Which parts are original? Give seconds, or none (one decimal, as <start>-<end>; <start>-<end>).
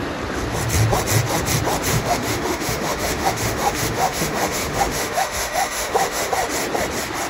0.0-1.9; 6.3-7.3